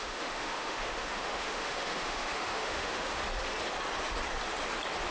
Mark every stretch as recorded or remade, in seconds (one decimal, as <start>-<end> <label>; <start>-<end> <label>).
0.0-3.2 remade; 3.2-5.1 recorded